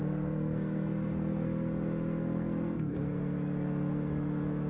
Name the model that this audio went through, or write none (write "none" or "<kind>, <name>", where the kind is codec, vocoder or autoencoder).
codec, SNAC